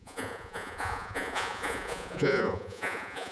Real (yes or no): no